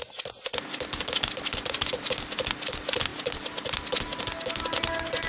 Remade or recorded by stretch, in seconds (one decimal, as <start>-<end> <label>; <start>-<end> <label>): 0.0-5.3 recorded